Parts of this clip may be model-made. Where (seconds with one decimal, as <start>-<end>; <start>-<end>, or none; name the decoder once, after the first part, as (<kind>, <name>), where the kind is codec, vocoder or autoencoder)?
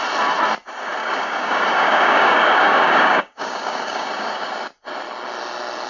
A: 1.0-4.5 (codec, DAC)